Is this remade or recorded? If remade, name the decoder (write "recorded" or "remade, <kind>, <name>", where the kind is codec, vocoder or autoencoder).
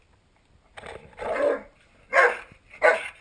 recorded